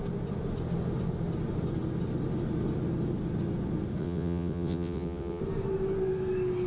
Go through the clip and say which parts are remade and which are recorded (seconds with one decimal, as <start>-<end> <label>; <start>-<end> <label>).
0.0-4.0 recorded; 4.0-5.4 remade; 5.4-6.7 recorded